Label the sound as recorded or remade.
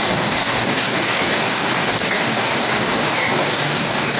remade